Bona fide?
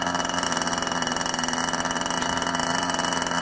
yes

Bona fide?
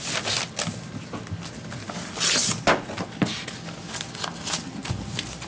yes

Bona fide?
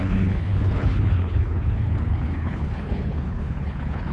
no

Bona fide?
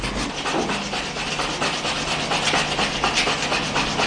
yes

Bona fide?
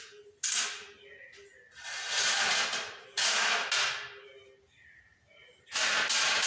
yes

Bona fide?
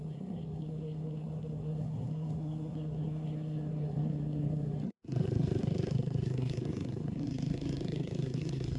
no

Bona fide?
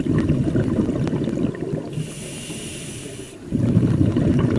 yes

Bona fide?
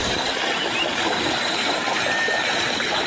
yes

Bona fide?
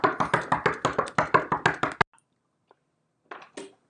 yes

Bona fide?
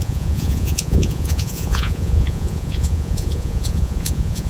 no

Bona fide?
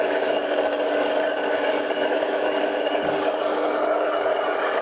no